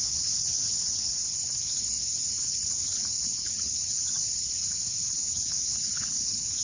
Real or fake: fake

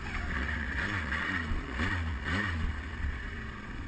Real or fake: fake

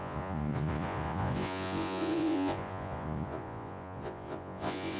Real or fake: fake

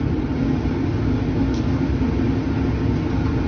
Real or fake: real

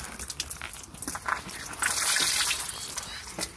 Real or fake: real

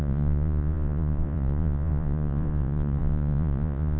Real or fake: fake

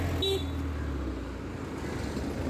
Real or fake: real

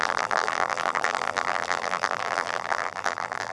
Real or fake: fake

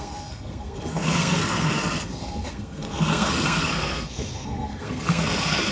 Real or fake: fake